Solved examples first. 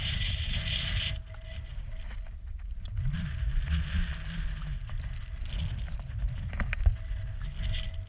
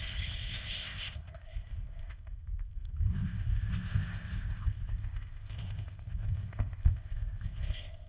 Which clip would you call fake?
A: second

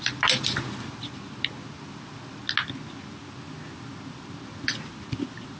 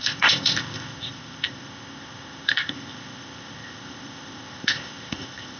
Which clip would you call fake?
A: second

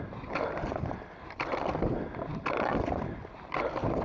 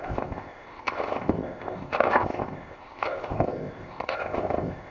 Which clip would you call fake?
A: second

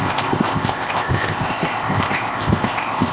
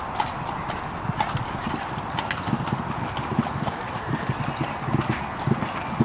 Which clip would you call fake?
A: first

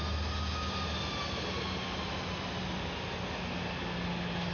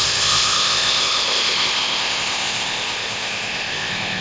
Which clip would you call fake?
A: second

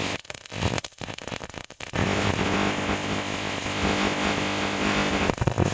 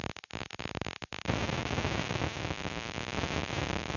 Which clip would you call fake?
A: first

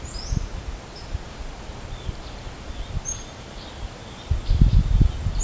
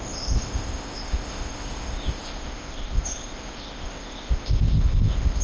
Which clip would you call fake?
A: second